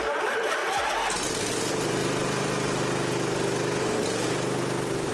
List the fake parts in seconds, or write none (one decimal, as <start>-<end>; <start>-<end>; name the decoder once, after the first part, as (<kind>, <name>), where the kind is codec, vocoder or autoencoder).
0.0-0.6 (vocoder, BigVGAN v2); 1.3-2.0